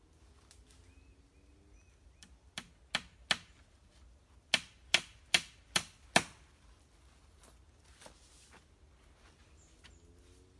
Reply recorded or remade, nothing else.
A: recorded